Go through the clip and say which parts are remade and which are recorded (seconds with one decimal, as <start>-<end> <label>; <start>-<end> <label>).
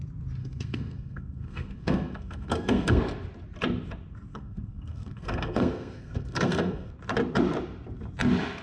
0.0-0.4 recorded; 0.4-3.0 remade; 3.0-4.3 recorded; 4.3-6.9 remade; 6.9-8.6 recorded